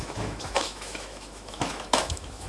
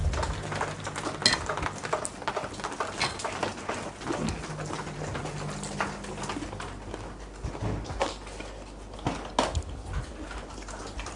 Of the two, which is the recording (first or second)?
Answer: second